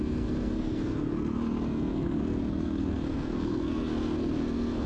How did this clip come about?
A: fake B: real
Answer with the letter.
A